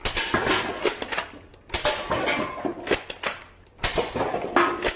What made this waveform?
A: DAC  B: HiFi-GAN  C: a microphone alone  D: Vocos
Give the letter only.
C